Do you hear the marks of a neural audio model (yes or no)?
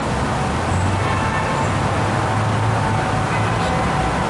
no